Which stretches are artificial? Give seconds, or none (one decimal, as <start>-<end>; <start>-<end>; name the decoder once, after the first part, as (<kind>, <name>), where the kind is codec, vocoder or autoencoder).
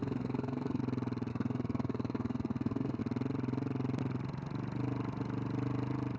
0.0-0.8 (codec, SNAC); 1.3-3.0